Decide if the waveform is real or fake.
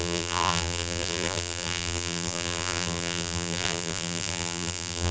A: fake